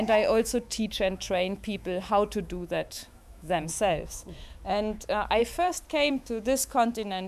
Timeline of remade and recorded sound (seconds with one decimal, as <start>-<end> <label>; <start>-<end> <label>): 0.0-5.4 remade; 5.4-6.1 recorded; 6.1-7.3 remade